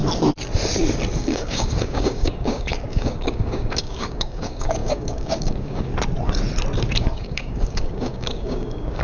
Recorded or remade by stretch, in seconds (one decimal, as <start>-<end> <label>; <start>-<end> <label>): 0.0-1.2 recorded; 1.2-5.9 remade; 5.9-7.0 recorded; 7.0-9.0 remade